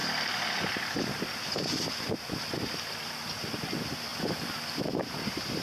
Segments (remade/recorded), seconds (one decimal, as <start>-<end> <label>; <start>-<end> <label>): 0.0-1.3 recorded; 1.3-5.6 remade